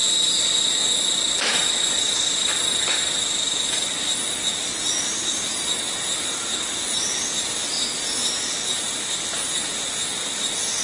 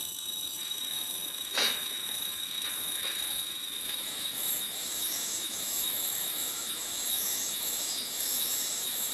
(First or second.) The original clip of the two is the first